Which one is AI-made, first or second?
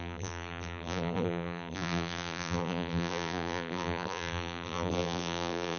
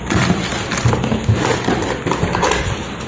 first